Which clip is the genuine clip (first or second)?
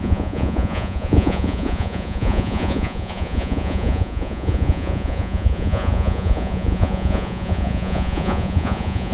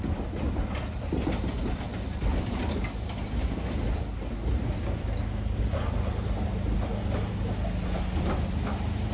second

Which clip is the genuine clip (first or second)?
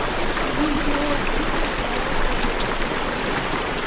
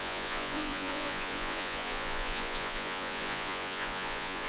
first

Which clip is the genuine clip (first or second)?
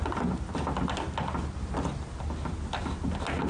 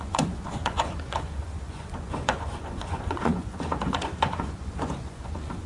first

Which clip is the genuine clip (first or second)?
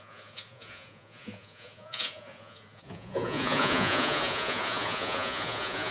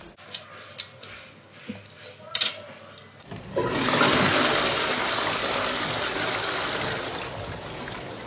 second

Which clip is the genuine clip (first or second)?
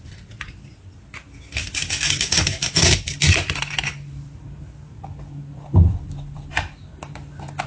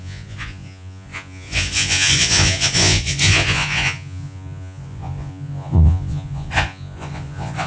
first